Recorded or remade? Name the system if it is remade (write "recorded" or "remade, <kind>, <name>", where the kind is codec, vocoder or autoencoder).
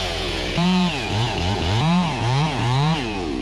remade, vocoder, Vocos